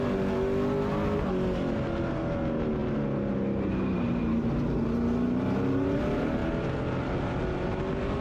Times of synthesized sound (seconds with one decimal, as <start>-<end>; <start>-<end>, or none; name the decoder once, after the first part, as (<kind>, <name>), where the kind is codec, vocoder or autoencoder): none